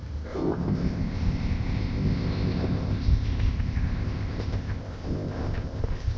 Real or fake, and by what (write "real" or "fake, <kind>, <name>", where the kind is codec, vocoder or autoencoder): fake, codec, ZipCodec